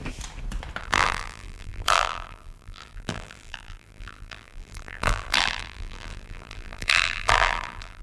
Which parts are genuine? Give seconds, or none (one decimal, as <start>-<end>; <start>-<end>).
0.0-0.8